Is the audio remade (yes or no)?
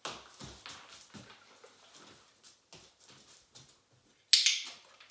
no